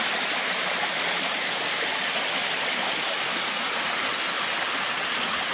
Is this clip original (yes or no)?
yes